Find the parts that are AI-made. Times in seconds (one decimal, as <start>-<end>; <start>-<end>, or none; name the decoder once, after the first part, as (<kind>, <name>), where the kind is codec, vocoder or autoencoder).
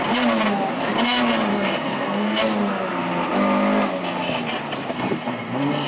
1.5-2.4 (codec, SNAC); 4.9-5.9